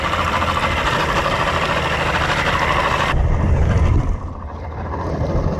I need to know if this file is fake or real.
real